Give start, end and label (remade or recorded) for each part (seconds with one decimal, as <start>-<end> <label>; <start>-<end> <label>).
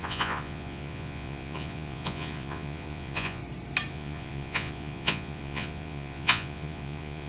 0.0-3.4 remade; 3.4-3.9 recorded; 3.9-7.3 remade